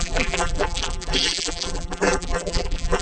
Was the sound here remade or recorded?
remade